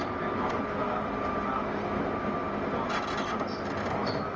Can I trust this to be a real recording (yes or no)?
yes